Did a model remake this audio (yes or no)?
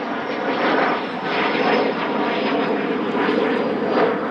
no